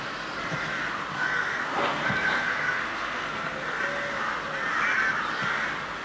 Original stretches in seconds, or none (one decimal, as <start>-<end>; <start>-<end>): 0.0-1.1; 3.8-6.0